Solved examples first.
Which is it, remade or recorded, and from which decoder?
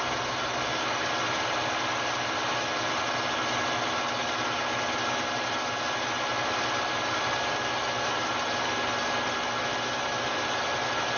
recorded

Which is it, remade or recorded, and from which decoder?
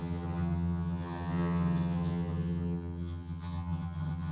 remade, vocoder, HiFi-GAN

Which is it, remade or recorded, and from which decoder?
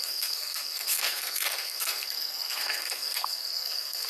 remade, codec, SNAC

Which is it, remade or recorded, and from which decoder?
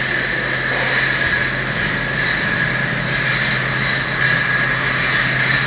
recorded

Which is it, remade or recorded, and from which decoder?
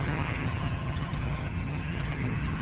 remade, vocoder, HiFi-GAN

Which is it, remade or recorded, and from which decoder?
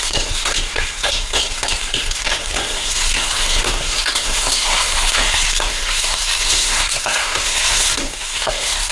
remade, codec, SNAC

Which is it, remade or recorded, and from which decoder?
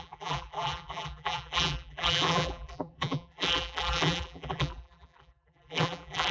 remade, vocoder, BigVGAN v2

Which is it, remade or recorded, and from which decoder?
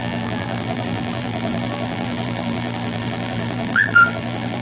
remade, vocoder, BigVGAN v2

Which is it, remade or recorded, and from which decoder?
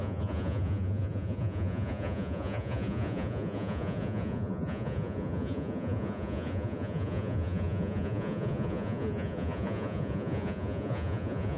remade, vocoder, Vocos